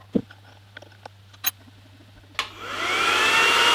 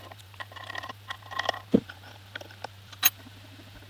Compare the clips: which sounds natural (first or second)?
first